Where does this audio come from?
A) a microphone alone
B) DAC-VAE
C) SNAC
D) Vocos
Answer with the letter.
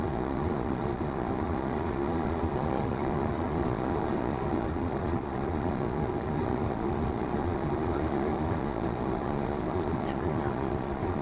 D